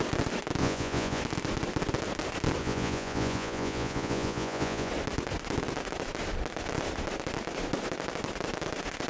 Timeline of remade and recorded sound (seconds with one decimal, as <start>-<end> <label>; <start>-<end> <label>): 0.0-0.6 recorded; 0.6-1.2 remade; 1.2-2.6 recorded; 2.6-4.9 remade; 4.9-9.1 recorded